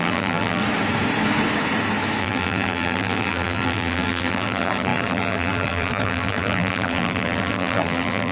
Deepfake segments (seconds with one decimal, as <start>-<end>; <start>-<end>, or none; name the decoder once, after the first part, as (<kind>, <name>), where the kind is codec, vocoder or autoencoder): 0.0-0.6 (vocoder, BigVGAN v2); 2.2-8.3